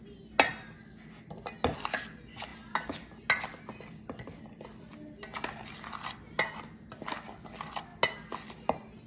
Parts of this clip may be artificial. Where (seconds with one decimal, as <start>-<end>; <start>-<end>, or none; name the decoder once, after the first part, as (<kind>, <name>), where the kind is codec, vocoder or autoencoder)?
none